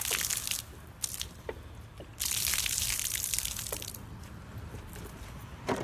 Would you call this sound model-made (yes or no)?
no